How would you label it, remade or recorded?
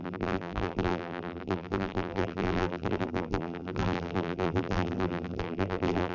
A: remade